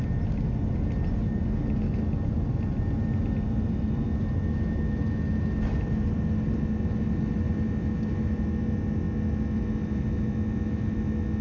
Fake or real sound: real